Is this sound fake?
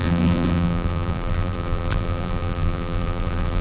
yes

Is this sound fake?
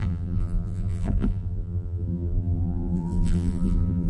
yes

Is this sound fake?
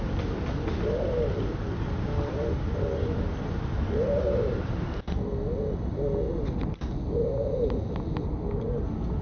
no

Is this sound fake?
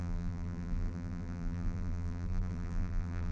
yes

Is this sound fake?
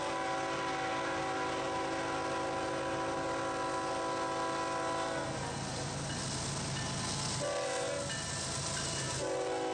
no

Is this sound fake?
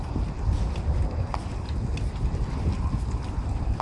no